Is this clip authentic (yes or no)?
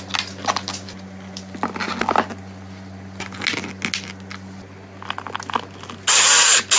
yes